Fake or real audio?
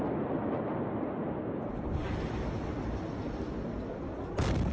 real